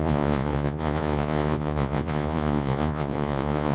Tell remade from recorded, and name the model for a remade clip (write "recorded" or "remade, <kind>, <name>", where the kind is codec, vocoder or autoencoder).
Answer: remade, vocoder, Vocos